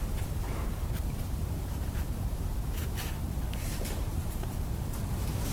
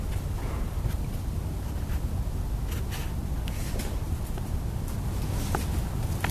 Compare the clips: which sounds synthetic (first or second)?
first